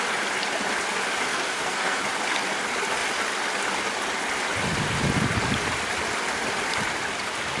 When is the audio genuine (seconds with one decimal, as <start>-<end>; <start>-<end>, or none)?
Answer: 0.0-1.3; 2.0-7.6